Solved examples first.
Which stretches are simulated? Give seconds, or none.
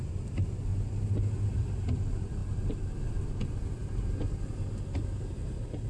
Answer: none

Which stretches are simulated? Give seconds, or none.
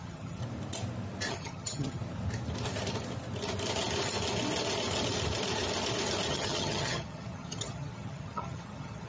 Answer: 0.0-0.4 (vocoder, HiFi-GAN); 1.3-2.0; 6.3-9.1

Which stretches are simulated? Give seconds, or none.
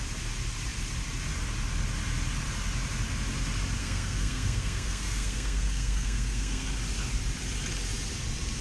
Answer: 3.8-6.7 (codec, SNAC)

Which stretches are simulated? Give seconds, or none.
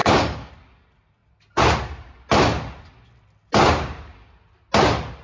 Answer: 0.0-0.5 (codec, DAC)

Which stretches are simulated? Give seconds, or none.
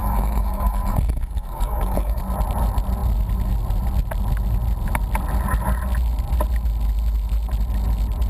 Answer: 0.0-2.2 (codec, SNAC)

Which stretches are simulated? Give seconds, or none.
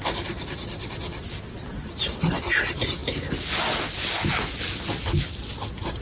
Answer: none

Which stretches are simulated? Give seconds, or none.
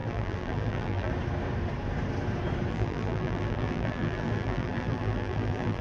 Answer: 0.0-1.1 (vocoder, BigVGAN v2); 2.7-5.8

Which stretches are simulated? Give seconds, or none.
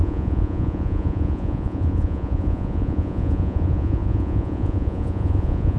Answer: 0.0-5.8 (vocoder, Vocos)